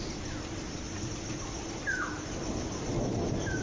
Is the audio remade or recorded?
recorded